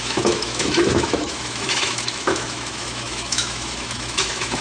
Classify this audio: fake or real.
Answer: fake